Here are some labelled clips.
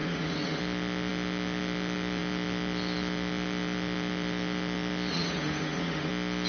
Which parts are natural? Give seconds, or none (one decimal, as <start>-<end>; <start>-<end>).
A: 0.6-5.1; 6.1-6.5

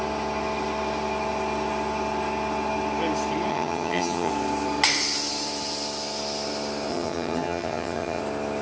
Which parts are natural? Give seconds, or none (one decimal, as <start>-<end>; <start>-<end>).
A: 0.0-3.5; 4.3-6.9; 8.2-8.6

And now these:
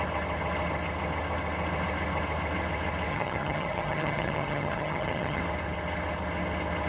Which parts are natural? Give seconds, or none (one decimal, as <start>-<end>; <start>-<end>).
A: 0.0-3.1; 5.4-6.9

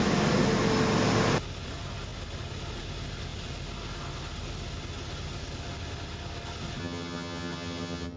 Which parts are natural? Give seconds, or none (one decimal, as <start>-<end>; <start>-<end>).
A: 0.0-6.8